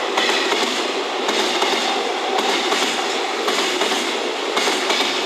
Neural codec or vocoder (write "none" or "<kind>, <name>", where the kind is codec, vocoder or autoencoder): none